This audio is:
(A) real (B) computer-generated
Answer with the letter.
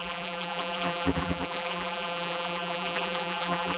B